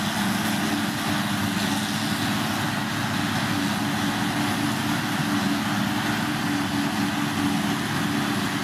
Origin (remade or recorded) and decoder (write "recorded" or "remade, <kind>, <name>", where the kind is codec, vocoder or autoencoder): recorded